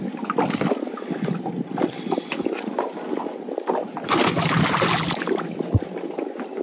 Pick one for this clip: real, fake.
real